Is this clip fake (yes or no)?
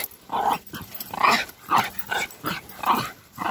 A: no